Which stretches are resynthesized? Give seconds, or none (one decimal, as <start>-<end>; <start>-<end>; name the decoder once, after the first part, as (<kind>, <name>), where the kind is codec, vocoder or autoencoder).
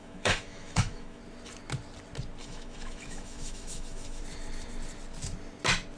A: 0.0-1.2 (autoencoder, DAC-VAE); 2.4-4.2